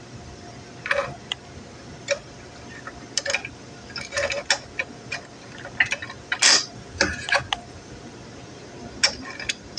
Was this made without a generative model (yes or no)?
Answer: yes